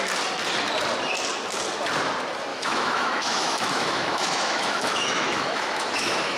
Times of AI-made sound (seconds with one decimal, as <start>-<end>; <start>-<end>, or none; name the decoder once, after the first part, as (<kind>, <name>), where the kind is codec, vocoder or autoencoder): 2.5-6.4 (autoencoder, DAC-VAE)